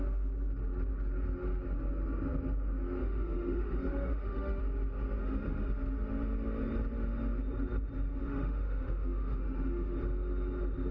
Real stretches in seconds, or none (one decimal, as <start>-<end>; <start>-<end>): 0.0-3.0; 4.6-5.2; 5.7-8.2; 10.0-10.9